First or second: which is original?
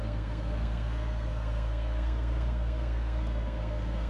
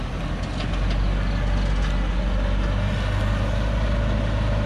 second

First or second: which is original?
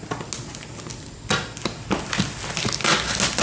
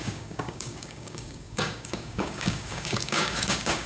first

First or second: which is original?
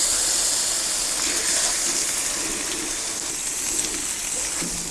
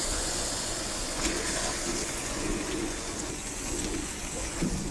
first